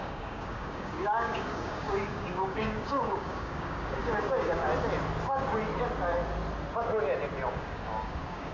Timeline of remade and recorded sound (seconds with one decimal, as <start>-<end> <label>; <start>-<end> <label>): 0.0-4.7 remade; 4.7-7.5 recorded; 7.5-8.5 remade